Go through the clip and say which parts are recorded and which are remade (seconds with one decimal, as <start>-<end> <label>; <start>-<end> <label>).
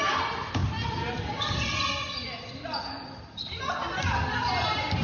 0.0-5.0 recorded